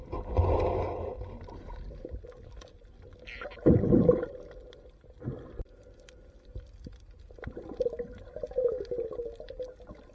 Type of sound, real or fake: real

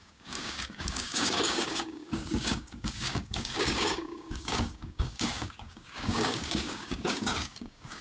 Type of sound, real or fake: fake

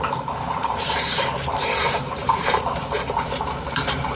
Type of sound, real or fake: fake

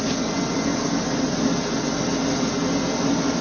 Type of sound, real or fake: real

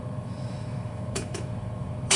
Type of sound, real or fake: fake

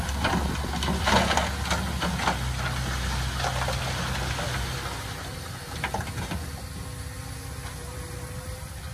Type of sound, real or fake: real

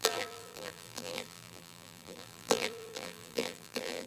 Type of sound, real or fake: fake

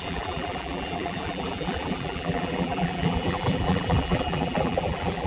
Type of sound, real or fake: fake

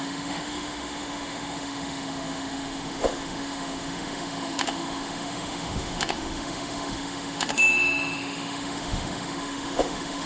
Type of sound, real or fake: fake